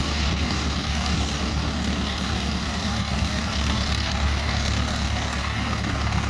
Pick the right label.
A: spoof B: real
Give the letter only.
A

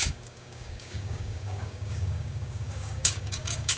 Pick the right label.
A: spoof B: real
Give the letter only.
A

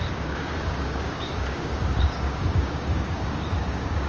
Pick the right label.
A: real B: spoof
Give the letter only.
B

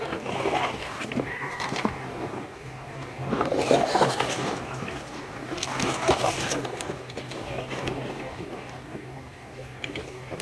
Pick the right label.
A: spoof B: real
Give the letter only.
A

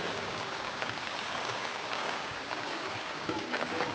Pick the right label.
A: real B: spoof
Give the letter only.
B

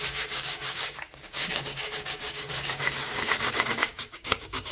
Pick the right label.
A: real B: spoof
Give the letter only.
B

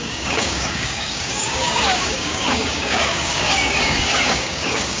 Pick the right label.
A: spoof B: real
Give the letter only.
A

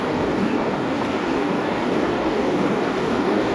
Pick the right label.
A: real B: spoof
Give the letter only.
B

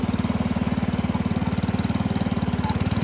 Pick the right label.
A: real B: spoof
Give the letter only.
A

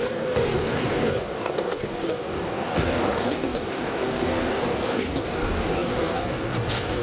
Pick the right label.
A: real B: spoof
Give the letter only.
B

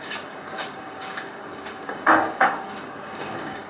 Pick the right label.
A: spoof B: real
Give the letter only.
A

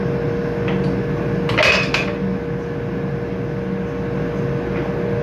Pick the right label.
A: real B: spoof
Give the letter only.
A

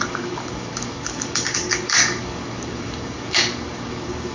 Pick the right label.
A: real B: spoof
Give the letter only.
B